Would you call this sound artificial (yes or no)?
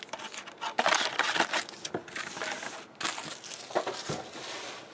no